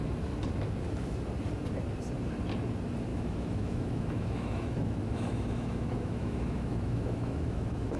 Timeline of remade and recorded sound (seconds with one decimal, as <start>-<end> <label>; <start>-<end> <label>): 0.0-3.1 recorded; 3.1-8.0 remade